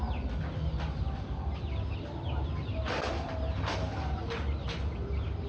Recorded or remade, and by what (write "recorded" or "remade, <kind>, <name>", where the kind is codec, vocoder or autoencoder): recorded